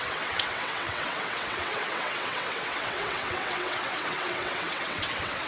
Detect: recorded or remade remade